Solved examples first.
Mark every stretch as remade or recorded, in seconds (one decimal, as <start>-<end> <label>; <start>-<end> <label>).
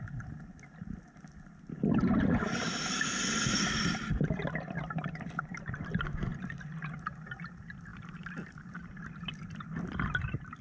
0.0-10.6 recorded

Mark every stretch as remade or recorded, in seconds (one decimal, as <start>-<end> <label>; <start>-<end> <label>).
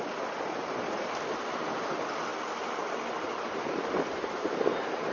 0.0-5.1 recorded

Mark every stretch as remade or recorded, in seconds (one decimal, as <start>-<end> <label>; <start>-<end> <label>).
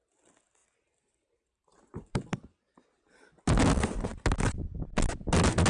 0.0-0.6 recorded; 0.6-2.2 remade; 2.2-5.7 recorded